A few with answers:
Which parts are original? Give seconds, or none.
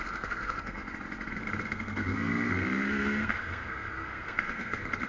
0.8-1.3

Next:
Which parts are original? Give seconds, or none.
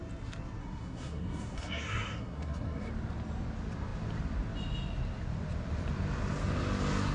0.0-0.6; 2.9-7.1